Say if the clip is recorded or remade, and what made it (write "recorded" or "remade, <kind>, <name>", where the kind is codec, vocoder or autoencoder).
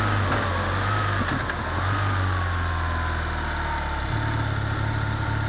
recorded